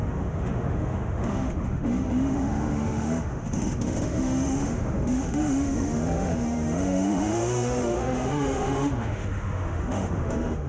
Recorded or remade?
remade